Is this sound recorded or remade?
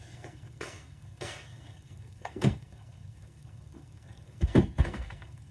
remade